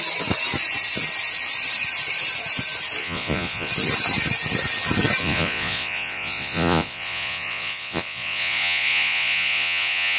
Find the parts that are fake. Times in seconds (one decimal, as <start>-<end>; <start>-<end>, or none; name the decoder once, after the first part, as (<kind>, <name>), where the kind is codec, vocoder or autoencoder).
3.0-3.7 (vocoder, Vocos); 5.2-10.2